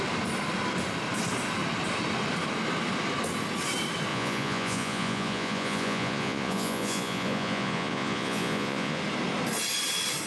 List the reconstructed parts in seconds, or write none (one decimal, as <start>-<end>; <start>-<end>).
4.1-9.0